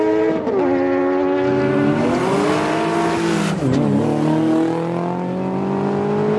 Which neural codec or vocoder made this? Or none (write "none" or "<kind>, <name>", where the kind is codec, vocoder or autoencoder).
none